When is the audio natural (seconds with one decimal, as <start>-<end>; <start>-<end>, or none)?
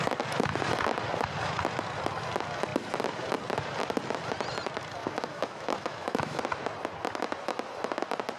0.0-5.0; 6.4-8.4